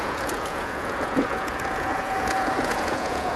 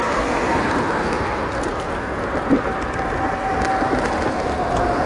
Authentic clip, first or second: second